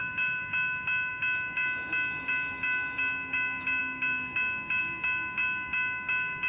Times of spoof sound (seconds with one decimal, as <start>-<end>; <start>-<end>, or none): none